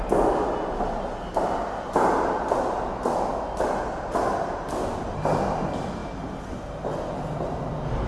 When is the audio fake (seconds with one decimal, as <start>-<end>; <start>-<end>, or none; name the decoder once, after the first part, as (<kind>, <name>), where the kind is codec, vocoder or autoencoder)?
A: none